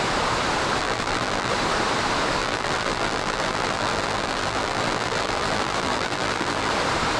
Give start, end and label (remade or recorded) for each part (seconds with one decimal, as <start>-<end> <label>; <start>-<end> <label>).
0.0-0.8 recorded; 0.8-1.5 remade; 1.5-2.4 recorded; 2.4-6.7 remade; 6.7-7.2 recorded